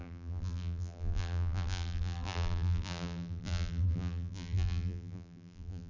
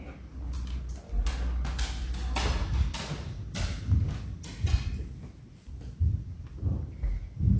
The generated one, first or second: first